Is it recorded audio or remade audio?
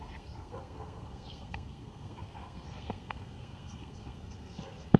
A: remade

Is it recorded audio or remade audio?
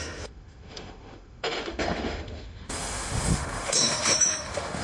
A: remade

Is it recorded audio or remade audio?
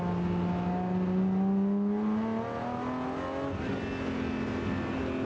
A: recorded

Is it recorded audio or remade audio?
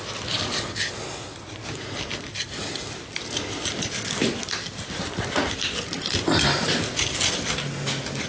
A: recorded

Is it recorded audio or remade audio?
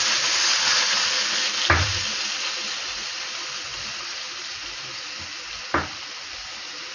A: recorded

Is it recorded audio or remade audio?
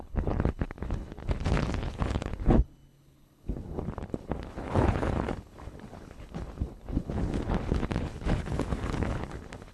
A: remade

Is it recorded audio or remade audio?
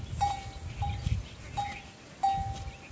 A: recorded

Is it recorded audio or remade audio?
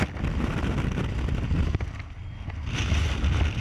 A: recorded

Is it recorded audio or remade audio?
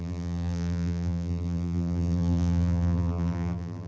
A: remade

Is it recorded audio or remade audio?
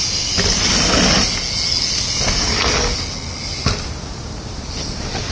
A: recorded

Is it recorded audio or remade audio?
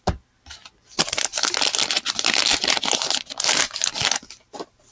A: recorded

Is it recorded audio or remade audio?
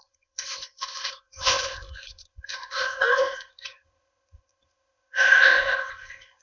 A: remade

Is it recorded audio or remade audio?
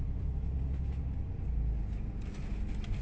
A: recorded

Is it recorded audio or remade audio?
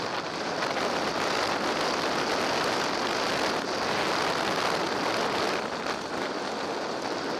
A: recorded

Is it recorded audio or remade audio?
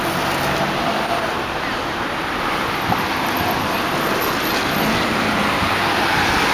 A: recorded